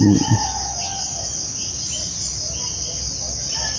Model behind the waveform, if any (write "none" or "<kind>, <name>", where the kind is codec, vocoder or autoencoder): none